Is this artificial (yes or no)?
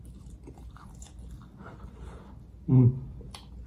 no